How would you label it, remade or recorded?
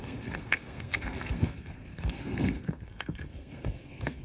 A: remade